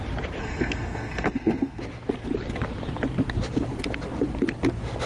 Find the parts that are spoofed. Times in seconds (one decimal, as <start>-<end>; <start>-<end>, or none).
0.4-1.8